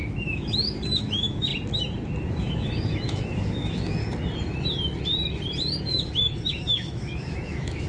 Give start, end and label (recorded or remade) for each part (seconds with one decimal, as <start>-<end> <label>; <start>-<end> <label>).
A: 0.0-1.5 remade; 1.5-2.3 recorded; 2.3-4.0 remade; 4.0-5.8 recorded; 5.8-7.9 remade